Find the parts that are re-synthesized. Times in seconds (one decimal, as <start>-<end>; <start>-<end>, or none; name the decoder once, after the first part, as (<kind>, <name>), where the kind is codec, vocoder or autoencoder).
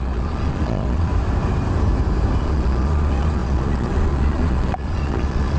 0.0-1.1 (vocoder, Vocos); 2.4-5.6